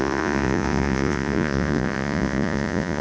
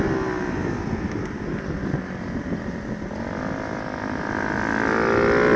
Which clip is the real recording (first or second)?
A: second